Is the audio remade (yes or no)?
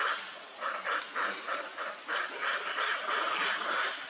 no